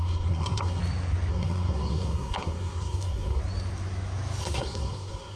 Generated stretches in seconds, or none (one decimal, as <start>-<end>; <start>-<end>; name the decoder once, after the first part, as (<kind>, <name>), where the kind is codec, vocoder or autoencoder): 0.0-0.8 (codec, SNAC); 1.3-3.4; 4.4-5.4